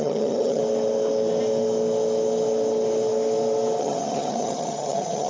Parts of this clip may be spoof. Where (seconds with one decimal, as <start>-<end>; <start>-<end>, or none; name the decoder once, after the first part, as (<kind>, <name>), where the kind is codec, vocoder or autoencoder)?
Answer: 0.0-0.6 (vocoder, HiFi-GAN); 3.8-5.3